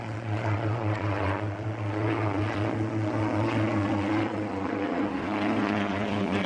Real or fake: fake